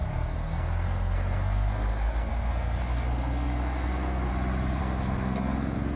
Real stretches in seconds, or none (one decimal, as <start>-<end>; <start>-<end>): 4.3-4.8